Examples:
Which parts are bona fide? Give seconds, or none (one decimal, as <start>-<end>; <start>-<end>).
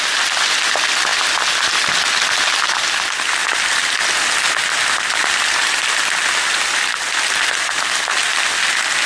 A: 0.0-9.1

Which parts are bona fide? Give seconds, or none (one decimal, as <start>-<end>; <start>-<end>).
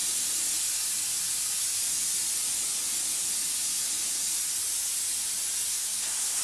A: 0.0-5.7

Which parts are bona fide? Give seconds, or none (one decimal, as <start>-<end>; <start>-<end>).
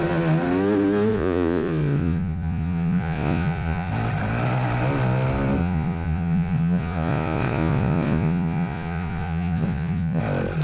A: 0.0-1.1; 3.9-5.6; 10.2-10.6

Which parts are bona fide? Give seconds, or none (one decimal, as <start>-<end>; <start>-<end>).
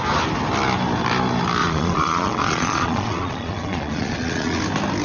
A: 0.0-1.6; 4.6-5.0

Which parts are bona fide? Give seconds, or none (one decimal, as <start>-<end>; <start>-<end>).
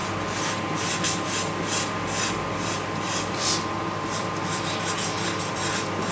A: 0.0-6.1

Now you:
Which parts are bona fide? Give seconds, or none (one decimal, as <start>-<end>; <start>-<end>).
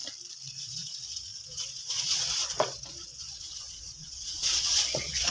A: 0.0-0.5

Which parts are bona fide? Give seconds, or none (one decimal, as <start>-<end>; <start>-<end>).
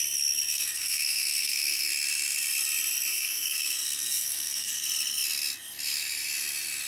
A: 0.0-0.5; 1.9-3.1; 4.8-6.9